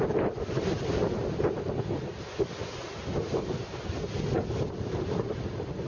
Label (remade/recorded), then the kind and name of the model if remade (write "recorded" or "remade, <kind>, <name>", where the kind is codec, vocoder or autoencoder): recorded